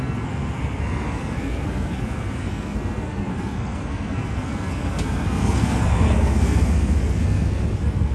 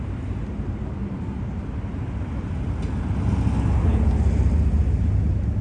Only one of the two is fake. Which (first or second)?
first